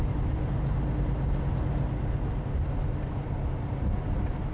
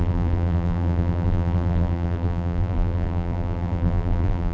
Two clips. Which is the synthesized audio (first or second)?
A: second